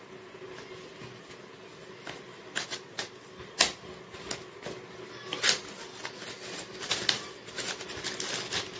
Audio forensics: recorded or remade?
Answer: recorded